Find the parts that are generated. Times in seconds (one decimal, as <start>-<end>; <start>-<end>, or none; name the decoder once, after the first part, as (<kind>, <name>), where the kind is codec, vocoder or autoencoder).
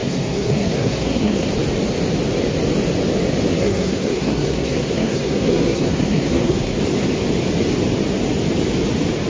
0.0-1.5 (codec, SNAC); 3.5-6.8